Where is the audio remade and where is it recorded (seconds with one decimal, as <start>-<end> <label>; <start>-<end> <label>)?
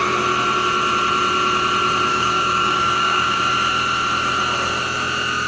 0.0-2.1 recorded; 2.1-3.4 remade; 3.4-5.5 recorded